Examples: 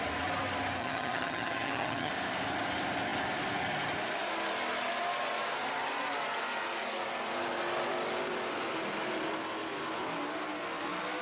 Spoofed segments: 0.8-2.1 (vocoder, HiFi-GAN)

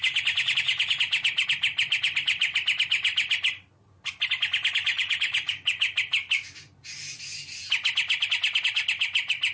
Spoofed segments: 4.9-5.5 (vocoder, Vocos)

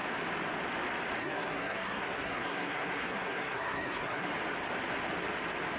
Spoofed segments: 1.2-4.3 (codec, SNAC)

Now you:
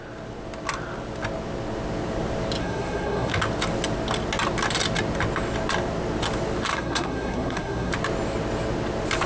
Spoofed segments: 2.6-3.3 (codec, SNAC); 6.7-7.9